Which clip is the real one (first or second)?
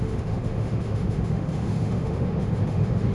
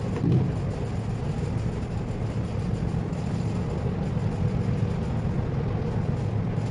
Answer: second